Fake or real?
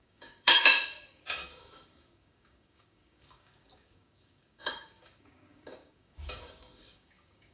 fake